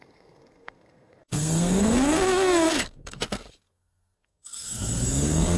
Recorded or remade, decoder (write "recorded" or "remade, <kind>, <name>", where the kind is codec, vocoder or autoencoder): remade, codec, SNAC